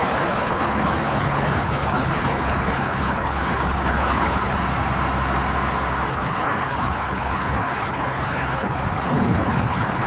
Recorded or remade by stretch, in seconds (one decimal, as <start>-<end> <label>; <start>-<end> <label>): 0.0-4.6 remade; 4.6-6.1 recorded; 6.1-10.1 remade